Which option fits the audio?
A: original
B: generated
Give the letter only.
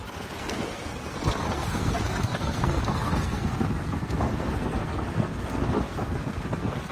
B